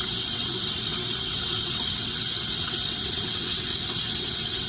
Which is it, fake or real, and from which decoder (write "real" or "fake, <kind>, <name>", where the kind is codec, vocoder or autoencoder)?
fake, vocoder, WaveNeXt